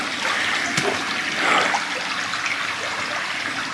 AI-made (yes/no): no